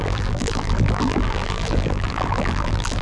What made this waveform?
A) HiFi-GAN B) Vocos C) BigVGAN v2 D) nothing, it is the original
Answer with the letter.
C